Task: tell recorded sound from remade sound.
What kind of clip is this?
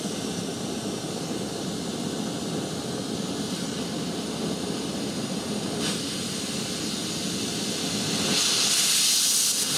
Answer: recorded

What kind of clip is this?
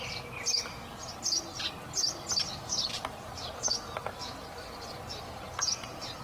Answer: recorded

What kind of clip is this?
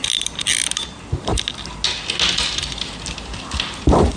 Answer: recorded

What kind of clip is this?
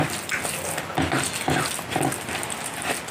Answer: recorded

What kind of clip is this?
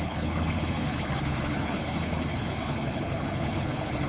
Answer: remade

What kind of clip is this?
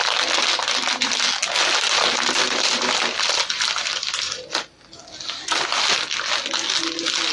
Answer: recorded